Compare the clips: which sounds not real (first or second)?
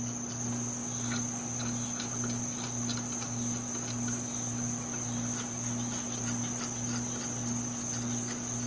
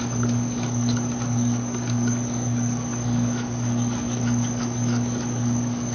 second